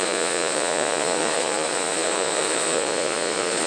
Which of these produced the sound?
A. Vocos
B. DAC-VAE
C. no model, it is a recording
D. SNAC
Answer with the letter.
A